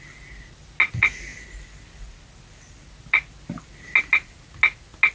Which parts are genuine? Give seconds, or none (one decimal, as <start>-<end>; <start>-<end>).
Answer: 0.0-5.1